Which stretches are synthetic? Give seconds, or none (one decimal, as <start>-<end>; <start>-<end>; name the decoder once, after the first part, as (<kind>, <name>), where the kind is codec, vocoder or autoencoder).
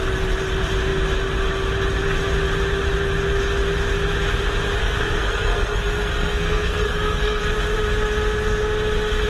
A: 4.8-7.4 (codec, SNAC)